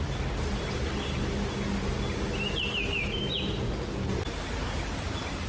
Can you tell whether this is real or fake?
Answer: real